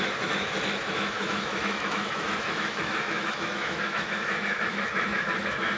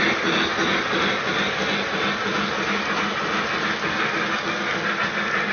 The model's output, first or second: first